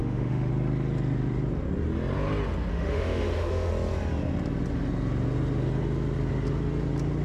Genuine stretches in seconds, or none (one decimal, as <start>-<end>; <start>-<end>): 0.5-2.7; 3.7-7.2